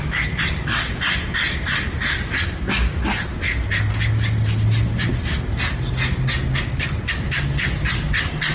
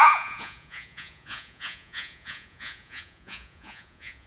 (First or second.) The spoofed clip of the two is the second